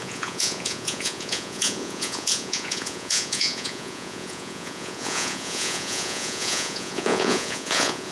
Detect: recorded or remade remade